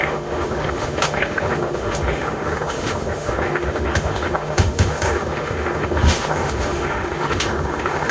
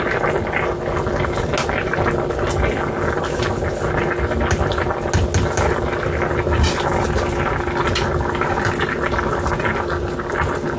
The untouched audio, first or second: second